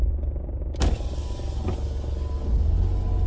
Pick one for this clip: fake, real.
real